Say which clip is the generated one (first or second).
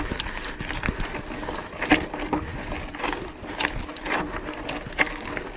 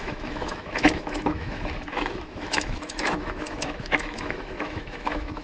second